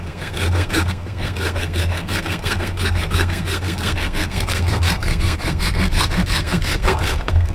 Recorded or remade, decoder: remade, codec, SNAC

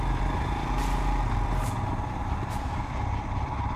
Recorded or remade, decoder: remade, vocoder, BigVGAN v2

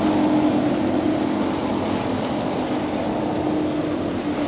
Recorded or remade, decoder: recorded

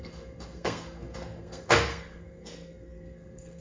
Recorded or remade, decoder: remade, codec, SNAC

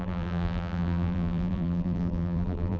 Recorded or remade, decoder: remade, vocoder, BigVGAN v2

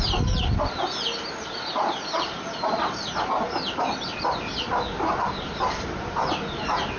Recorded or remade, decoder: recorded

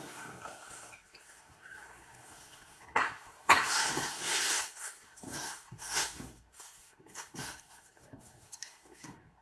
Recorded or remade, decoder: remade, codec, SNAC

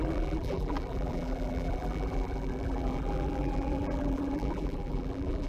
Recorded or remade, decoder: remade, vocoder, BigVGAN v2